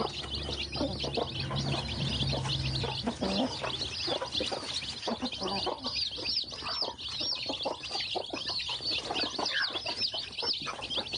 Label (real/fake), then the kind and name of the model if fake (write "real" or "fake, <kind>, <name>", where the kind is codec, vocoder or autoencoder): real